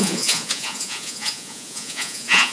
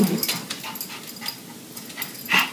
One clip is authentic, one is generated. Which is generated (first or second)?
first